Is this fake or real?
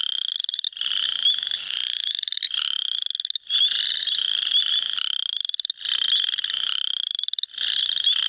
real